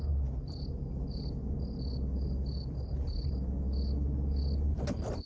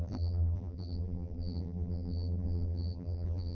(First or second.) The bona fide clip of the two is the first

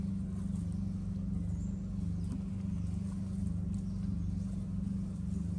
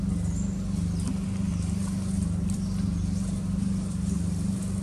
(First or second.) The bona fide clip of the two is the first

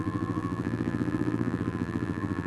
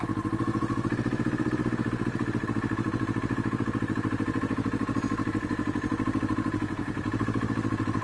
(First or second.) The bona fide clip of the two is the second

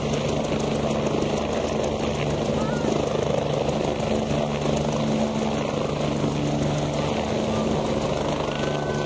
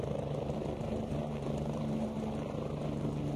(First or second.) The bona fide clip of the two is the first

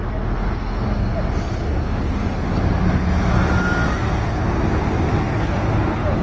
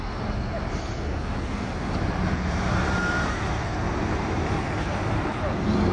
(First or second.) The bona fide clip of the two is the first